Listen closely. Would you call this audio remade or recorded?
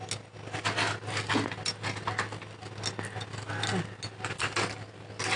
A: recorded